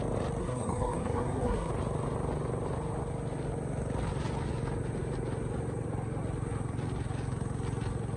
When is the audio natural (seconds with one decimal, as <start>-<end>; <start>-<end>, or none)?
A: 0.0-0.4; 1.7-8.2